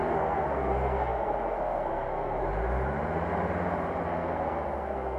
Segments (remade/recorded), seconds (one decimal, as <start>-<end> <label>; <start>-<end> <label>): 0.0-2.4 remade; 2.4-4.0 recorded; 4.0-5.2 remade